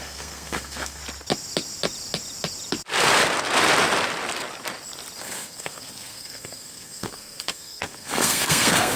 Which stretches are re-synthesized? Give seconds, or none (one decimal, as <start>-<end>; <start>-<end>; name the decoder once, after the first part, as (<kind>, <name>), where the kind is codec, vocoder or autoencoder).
0.0-1.0 (codec, SNAC); 5.2-9.0